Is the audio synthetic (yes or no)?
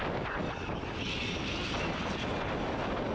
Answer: no